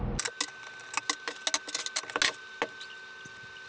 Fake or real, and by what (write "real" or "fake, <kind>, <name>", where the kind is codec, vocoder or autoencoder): real